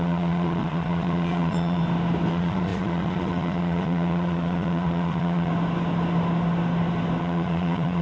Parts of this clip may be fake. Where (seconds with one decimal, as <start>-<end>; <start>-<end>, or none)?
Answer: 0.0-1.8; 2.3-5.5; 7.2-8.0